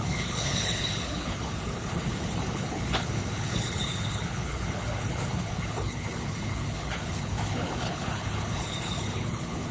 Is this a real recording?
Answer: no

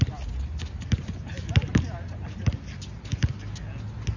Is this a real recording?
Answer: yes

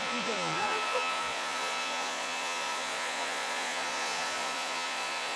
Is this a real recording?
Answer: no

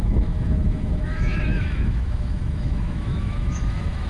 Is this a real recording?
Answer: no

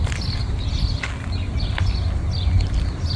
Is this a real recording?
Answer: yes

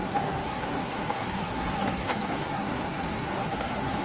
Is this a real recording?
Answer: no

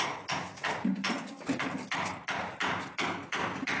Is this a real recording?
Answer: yes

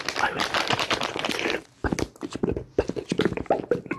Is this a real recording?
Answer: yes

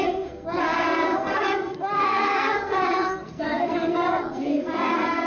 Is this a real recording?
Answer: no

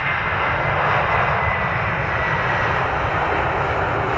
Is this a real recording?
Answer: yes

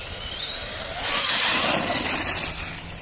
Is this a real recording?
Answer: yes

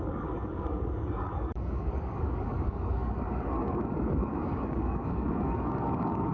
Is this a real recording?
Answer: no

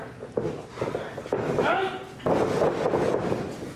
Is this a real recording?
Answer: yes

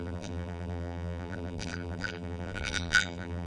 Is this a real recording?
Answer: no